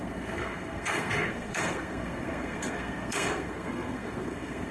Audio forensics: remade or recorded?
remade